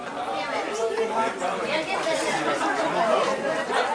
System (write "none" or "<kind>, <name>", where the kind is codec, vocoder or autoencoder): none